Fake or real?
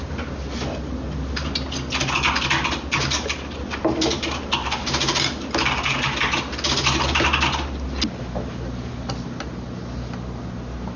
real